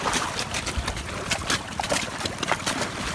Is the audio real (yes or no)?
yes